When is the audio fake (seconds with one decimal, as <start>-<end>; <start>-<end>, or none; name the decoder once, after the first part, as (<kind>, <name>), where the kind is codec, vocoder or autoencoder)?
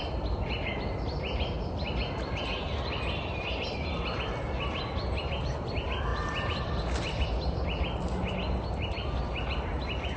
none